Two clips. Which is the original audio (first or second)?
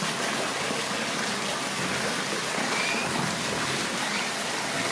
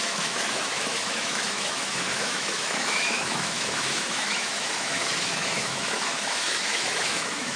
first